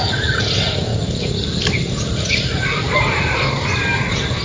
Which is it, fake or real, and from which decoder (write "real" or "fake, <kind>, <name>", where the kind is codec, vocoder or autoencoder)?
real